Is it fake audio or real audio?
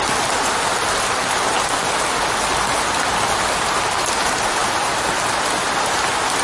real